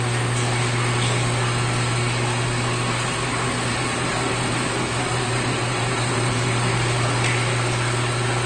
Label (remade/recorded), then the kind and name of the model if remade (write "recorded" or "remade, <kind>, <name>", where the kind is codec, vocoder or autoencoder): recorded